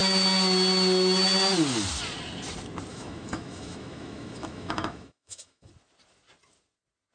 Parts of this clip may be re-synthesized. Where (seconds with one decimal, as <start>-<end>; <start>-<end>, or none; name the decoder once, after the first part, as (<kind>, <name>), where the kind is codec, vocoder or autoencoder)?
2.9-5.7 (autoencoder, DAC-VAE)